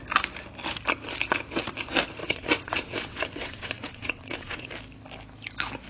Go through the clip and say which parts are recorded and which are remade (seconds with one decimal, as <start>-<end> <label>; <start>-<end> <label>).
0.0-2.2 recorded; 2.2-4.7 remade; 4.7-5.9 recorded